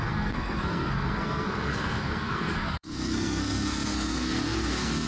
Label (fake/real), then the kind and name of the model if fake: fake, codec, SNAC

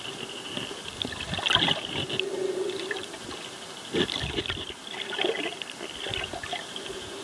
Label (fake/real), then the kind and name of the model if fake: real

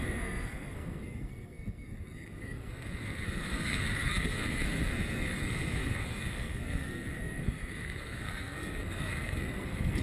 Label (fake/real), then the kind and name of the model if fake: fake, codec, SNAC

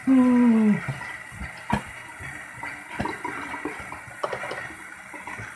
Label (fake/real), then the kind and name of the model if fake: real